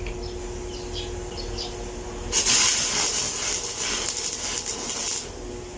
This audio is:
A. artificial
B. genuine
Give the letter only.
B